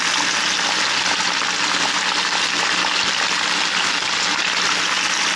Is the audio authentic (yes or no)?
yes